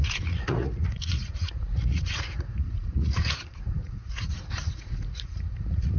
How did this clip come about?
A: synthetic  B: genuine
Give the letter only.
A